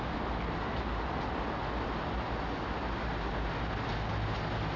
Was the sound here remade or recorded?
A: recorded